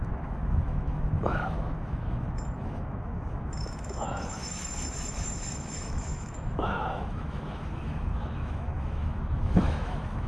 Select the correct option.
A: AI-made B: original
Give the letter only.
A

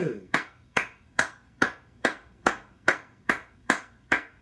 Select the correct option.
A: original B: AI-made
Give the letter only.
B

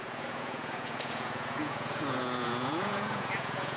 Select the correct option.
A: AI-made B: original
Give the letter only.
A